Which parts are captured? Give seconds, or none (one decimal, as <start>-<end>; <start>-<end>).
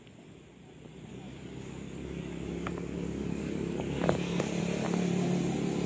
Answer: 0.0-1.1; 4.6-5.9